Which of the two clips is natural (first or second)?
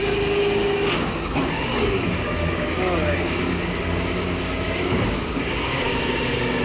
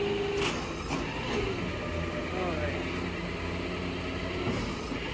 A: second